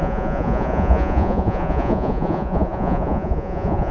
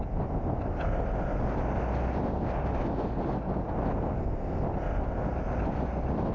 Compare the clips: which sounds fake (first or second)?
first